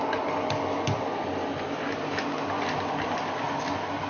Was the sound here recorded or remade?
recorded